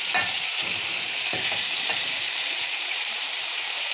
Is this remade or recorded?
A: remade